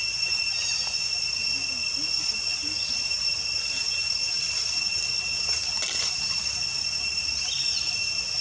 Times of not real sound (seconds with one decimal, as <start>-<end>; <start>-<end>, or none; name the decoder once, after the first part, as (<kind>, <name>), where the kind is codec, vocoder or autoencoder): none